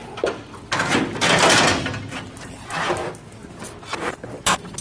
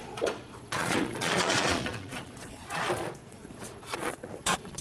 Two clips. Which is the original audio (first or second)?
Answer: first